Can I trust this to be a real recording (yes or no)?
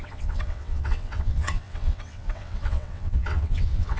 no